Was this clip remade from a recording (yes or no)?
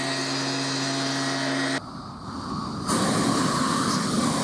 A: no